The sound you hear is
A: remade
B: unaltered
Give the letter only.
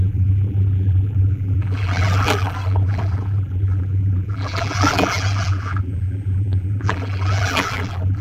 A